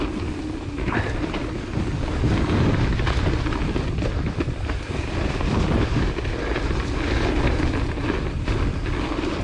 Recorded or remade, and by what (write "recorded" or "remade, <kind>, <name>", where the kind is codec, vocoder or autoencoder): recorded